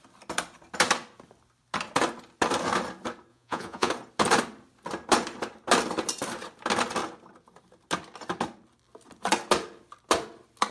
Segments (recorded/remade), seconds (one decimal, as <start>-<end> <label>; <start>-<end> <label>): 0.0-3.3 recorded; 3.3-3.9 remade; 3.9-10.7 recorded